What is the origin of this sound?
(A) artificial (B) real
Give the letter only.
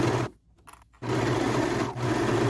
B